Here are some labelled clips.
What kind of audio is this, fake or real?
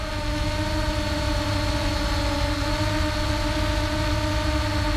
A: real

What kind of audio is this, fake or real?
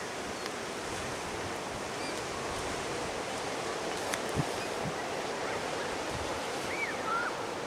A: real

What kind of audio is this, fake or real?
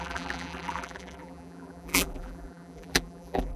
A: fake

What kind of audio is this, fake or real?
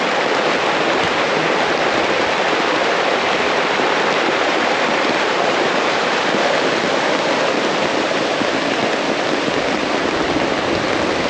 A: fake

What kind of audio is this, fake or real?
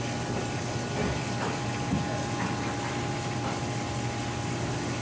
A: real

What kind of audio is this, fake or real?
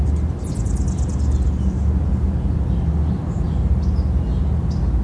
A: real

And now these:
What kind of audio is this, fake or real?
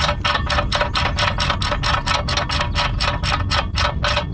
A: real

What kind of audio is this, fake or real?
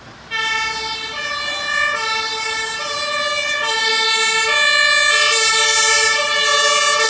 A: real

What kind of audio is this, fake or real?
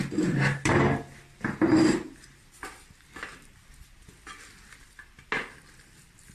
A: real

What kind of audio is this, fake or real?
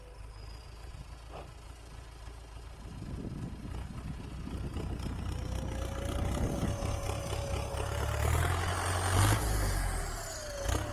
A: real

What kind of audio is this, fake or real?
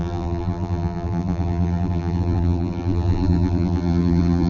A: fake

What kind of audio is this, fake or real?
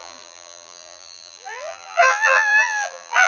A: fake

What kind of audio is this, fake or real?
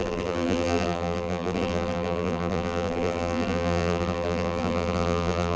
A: fake